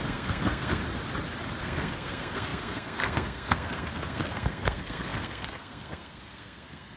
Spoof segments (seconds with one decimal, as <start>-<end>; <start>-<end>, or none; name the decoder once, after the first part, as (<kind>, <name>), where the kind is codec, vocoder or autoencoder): 0.0-0.8 (codec, SNAC); 1.6-7.0